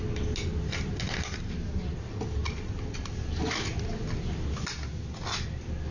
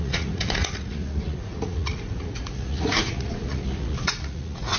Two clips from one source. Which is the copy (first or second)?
second